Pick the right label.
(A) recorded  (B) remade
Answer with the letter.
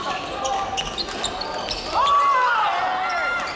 A